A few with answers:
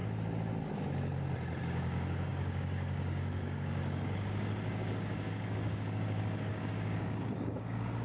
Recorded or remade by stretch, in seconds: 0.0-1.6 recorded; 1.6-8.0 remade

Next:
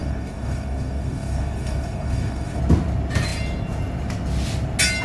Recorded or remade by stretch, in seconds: 0.0-2.6 remade; 2.6-5.0 recorded

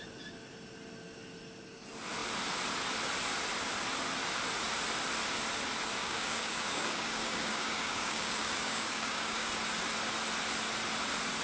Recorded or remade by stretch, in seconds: 0.0-6.0 recorded; 6.0-9.5 remade; 9.5-11.4 recorded

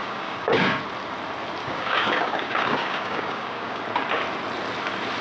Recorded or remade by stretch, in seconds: 0.0-0.8 remade; 0.8-1.6 recorded; 1.6-3.8 remade; 3.8-5.2 recorded